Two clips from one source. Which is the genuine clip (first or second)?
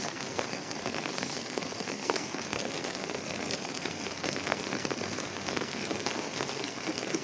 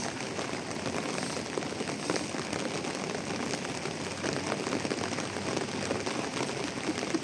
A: second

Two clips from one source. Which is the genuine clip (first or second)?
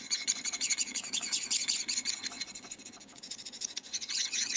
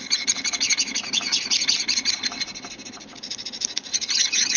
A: second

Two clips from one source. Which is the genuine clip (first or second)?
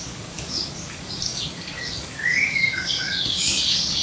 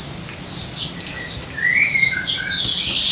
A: second